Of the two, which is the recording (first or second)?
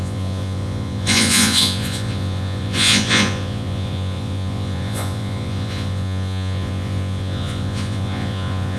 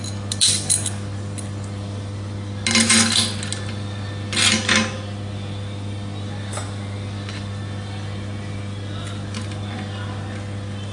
second